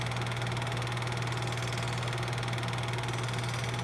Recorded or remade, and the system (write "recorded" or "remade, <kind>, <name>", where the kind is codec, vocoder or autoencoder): recorded